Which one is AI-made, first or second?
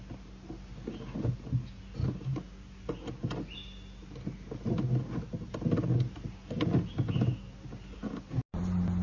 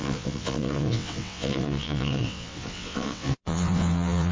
second